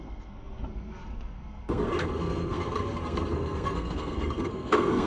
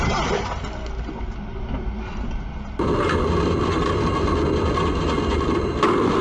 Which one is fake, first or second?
first